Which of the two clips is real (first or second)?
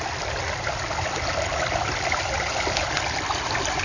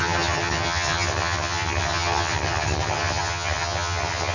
first